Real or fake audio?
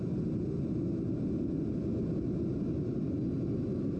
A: real